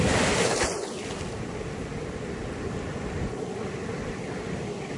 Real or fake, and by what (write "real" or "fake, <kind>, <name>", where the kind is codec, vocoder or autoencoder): real